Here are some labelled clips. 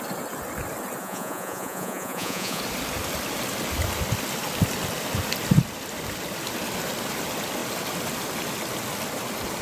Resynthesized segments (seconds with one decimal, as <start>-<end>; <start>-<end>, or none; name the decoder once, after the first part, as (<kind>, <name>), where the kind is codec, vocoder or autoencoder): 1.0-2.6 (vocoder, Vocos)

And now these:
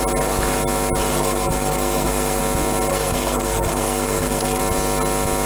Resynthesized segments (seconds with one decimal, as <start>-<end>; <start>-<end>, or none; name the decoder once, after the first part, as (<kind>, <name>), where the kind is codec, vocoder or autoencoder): 1.1-2.4 (codec, SNAC); 2.9-4.6

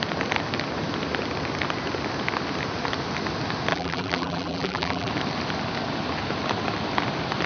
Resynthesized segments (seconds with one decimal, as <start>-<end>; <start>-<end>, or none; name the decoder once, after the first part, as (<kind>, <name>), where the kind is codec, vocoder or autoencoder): 3.7-5.1 (vocoder, BigVGAN v2)

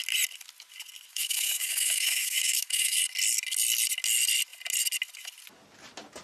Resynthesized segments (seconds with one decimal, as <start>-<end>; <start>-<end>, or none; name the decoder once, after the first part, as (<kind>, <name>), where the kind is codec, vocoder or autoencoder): 1.1-3.0 (autoencoder, DAC-VAE)

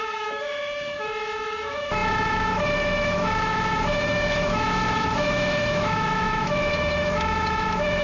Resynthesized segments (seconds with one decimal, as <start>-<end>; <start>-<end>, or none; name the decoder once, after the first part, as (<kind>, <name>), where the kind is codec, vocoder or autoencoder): 0.0-8.0 (autoencoder, DAC-VAE)

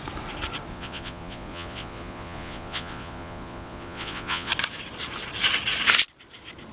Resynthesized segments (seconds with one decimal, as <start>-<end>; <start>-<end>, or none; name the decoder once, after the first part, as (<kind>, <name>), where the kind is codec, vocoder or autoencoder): 0.7-4.5 (vocoder, Vocos)

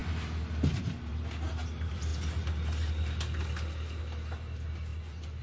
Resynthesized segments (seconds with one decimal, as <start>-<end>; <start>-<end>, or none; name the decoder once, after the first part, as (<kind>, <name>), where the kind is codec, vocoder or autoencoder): none